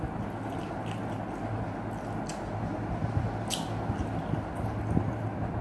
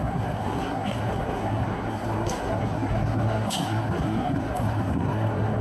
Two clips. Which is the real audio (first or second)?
first